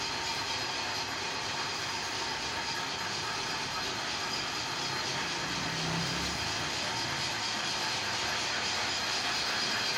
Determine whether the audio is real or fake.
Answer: real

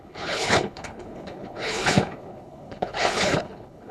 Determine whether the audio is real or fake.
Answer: fake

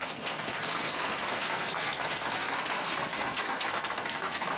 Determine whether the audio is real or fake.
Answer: fake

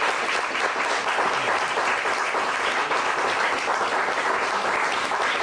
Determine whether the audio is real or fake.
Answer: real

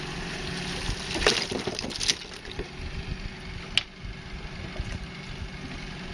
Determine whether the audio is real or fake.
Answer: real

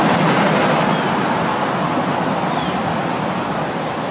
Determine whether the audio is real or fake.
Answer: real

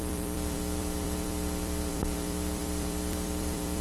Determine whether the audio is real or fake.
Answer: fake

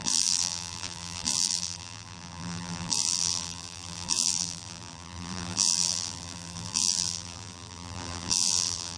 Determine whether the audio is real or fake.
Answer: fake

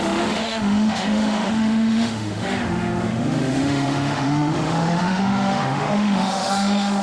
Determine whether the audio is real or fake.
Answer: fake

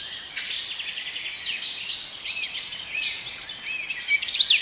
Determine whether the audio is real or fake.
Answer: real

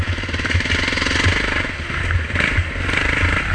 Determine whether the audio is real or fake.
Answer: real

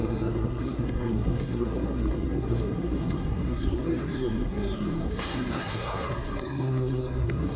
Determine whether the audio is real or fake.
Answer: fake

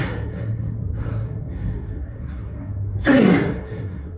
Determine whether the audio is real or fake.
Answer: fake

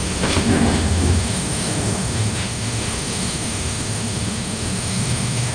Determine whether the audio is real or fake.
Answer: fake